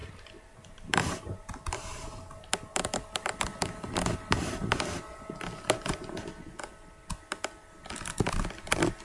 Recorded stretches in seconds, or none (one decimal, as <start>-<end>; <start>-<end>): 2.5-9.0